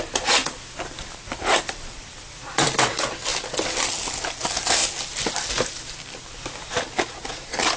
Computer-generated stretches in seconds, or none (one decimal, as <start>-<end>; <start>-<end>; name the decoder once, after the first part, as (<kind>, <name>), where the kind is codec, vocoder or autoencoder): 0.4-2.8 (vocoder, BigVGAN v2); 3.3-3.9; 4.8-7.8